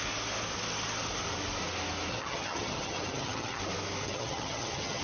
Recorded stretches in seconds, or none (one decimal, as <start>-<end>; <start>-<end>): 0.0-2.1; 3.6-4.0